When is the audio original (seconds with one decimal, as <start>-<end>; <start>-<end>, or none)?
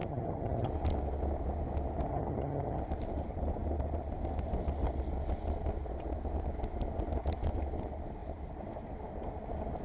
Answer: 0.7-2.1; 2.8-9.8